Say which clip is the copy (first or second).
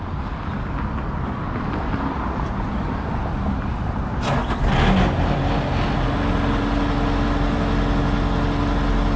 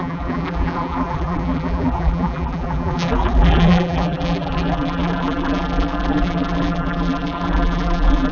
second